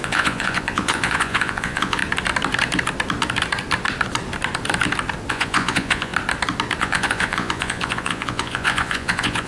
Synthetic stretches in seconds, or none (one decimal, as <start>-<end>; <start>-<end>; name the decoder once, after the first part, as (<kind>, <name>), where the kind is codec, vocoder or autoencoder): 0.0-2.0 (vocoder, Vocos); 5.3-6.1; 6.8-9.5